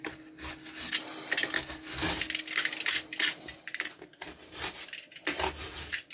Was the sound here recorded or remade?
recorded